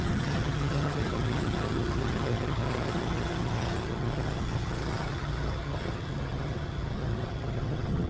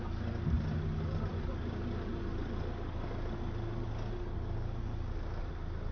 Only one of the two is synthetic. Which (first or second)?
first